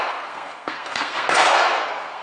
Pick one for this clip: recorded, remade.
remade